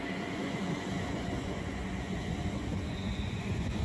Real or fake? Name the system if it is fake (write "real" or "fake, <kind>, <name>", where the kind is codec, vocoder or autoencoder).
fake, vocoder, Vocos